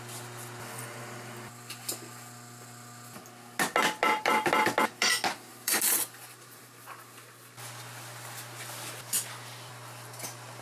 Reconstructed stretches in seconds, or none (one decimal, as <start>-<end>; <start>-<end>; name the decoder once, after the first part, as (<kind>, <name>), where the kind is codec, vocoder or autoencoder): 5.5-6.8 (vocoder, BigVGAN v2)